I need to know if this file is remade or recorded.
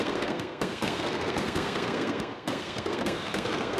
remade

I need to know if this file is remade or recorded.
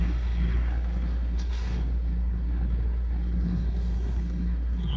remade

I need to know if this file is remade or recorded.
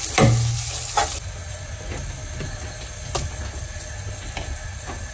recorded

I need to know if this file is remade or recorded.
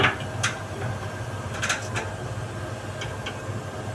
recorded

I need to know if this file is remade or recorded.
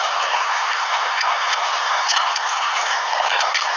remade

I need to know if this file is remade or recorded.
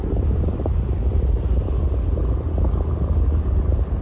recorded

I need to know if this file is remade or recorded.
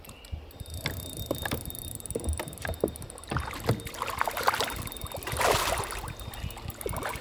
recorded